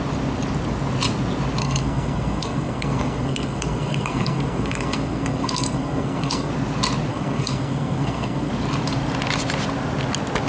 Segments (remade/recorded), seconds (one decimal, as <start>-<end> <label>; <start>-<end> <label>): 0.0-1.6 recorded; 1.6-6.5 remade; 6.5-7.1 recorded; 7.1-8.5 remade; 8.5-10.5 recorded